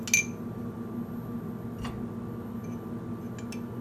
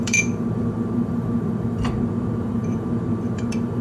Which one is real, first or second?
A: first